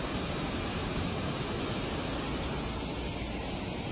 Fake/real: real